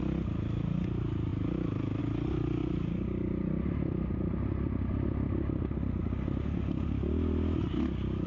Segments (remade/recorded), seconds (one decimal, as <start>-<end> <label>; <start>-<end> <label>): 0.0-8.3 recorded